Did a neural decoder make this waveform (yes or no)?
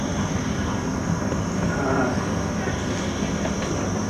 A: no